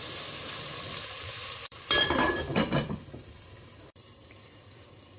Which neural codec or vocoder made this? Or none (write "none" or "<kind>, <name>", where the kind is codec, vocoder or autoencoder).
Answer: vocoder, BigVGAN v2